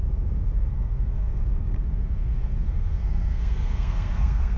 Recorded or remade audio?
remade